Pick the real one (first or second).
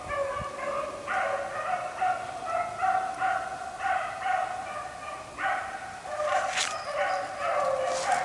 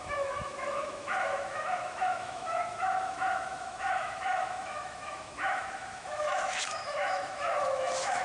first